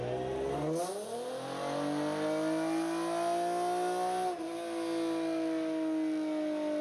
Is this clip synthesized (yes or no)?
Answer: no